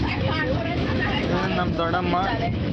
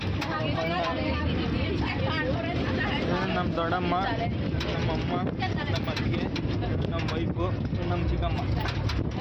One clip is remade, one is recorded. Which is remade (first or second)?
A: first